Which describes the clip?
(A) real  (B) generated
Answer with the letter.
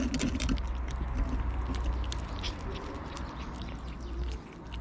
A